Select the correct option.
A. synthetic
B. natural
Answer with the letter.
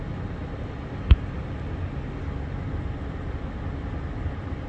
B